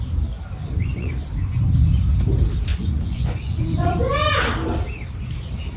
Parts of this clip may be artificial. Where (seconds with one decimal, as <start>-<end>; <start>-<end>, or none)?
0.6-1.1; 2.7-3.9